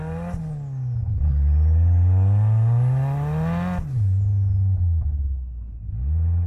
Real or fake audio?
real